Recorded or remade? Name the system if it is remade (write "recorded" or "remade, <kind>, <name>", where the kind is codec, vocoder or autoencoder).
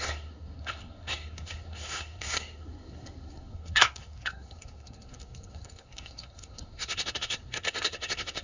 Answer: remade, codec, SNAC